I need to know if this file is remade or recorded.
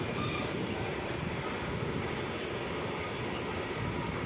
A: recorded